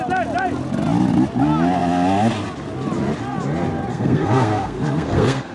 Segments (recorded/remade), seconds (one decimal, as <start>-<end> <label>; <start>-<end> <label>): 0.0-3.9 recorded; 3.9-5.5 remade